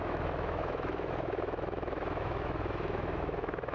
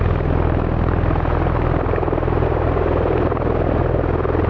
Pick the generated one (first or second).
first